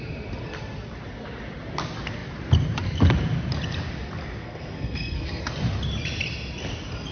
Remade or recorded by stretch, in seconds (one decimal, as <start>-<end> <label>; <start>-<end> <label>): 0.0-4.4 recorded; 4.4-5.4 remade; 5.4-7.1 recorded